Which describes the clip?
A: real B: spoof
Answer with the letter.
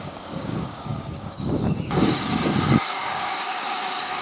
B